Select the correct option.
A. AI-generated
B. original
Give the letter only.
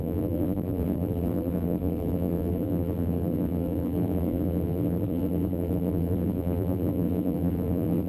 A